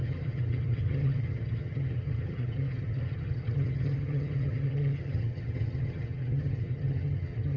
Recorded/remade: remade